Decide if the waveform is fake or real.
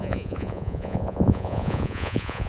fake